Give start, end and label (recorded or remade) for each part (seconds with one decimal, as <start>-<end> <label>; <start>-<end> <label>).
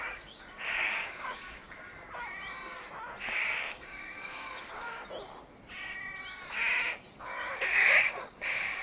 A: 0.0-1.9 remade; 1.9-3.2 recorded; 3.2-5.0 remade; 5.0-7.2 recorded; 7.2-8.8 remade